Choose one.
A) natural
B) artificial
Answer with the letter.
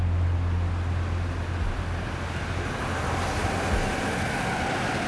A